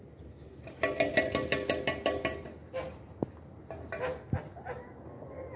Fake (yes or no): no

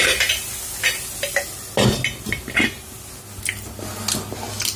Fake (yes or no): no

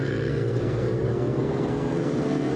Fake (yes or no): yes